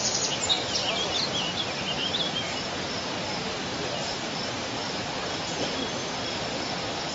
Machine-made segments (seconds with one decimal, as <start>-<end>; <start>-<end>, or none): 3.5-5.0